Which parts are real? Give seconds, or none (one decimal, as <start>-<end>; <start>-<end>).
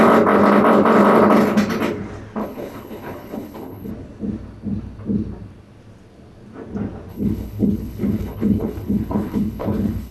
0.0-2.4; 3.9-7.1